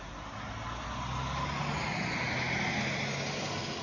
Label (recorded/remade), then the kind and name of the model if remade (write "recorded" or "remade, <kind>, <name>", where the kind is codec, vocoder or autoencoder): recorded